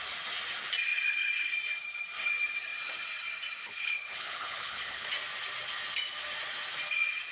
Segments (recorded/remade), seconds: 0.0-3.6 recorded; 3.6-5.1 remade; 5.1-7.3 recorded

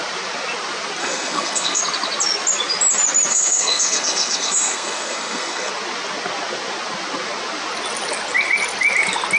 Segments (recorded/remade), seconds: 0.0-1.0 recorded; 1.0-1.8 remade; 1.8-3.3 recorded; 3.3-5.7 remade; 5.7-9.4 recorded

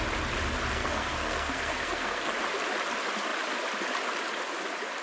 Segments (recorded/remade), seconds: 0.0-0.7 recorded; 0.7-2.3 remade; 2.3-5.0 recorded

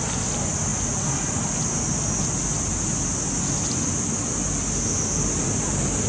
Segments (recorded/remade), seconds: 0.0-6.1 recorded

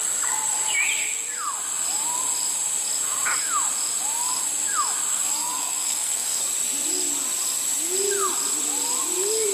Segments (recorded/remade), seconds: 0.0-5.1 recorded; 5.1-6.4 remade; 6.4-9.5 recorded

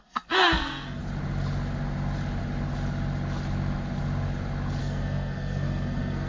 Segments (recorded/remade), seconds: 0.0-1.0 remade; 1.0-4.8 recorded; 4.8-6.3 remade